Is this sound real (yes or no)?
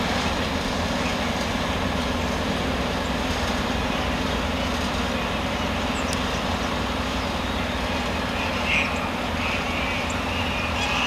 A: yes